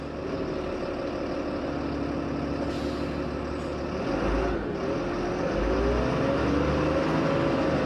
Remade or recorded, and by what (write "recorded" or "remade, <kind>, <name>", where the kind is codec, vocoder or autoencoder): recorded